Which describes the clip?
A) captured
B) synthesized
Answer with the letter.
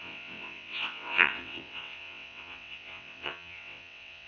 B